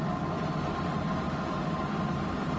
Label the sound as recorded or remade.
recorded